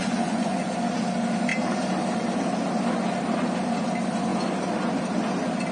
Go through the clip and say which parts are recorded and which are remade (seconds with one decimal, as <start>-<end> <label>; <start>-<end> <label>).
0.0-0.7 remade; 0.7-5.7 recorded